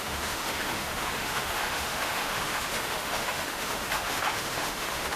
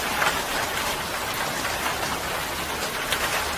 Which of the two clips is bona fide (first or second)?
second